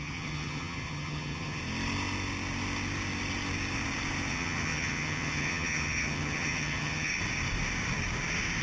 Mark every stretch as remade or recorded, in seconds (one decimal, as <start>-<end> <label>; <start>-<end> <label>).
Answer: 0.0-1.6 remade; 1.6-4.3 recorded; 4.3-7.1 remade; 7.1-8.6 recorded